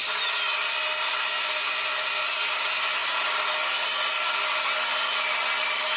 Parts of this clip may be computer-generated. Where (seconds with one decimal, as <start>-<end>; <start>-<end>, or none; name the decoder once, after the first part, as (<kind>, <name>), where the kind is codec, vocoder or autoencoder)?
none